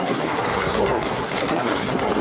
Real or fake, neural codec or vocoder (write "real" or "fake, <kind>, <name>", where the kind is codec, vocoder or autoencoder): fake, codec, SNAC